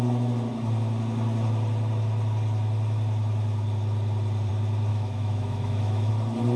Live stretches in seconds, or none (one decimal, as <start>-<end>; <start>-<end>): 0.0-4.9; 6.1-6.6

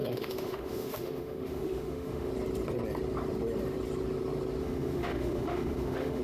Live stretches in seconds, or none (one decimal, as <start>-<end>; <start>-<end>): 2.3-4.6

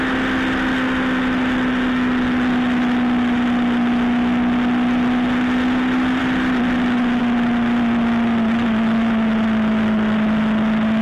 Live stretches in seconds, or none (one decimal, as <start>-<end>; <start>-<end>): 0.0-11.0

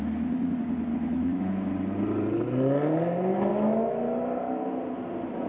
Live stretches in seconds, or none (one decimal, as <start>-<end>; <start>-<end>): 0.0-0.9; 1.7-3.5; 4.7-5.5

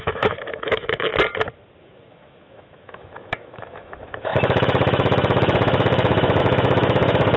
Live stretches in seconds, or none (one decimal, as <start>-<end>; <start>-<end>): 1.1-1.8

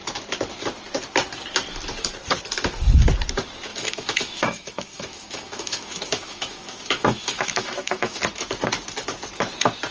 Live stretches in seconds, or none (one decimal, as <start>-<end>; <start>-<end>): 0.0-3.7; 8.2-9.9

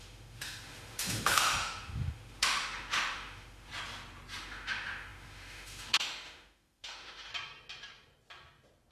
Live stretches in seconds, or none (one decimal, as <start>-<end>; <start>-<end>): 3.7-4.4; 7.3-8.9